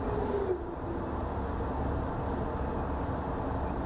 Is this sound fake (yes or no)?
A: no